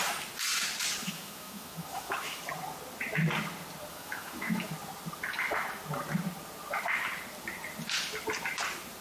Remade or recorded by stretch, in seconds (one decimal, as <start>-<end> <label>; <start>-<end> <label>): 0.0-1.0 recorded; 1.0-2.4 remade; 2.4-3.9 recorded; 3.9-4.7 remade; 4.7-9.0 recorded